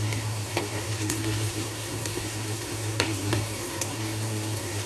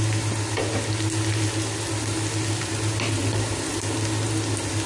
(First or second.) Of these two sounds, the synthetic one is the first